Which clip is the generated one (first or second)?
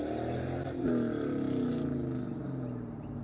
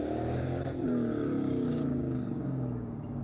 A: second